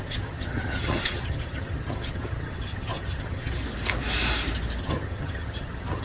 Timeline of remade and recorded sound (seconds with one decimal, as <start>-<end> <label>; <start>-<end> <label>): 0.0-3.6 remade; 3.6-4.8 recorded; 4.8-6.0 remade